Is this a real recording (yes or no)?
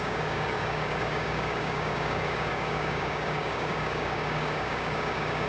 no